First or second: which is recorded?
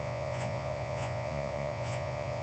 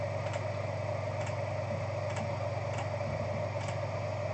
second